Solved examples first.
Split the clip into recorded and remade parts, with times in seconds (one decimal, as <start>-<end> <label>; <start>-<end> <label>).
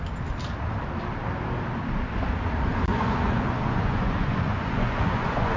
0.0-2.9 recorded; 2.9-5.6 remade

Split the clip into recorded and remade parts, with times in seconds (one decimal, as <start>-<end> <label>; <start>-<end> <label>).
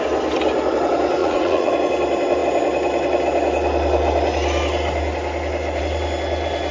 0.0-1.2 recorded; 1.2-1.7 remade; 1.7-6.7 recorded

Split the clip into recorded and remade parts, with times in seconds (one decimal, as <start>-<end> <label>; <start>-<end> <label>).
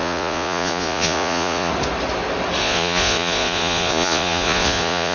0.0-1.7 remade; 1.7-2.6 recorded; 2.6-5.1 remade